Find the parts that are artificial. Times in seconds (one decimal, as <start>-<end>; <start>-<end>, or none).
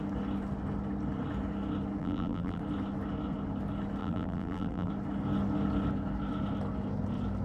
2.0-2.6; 4.0-4.9